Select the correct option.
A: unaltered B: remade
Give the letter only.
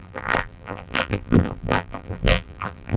B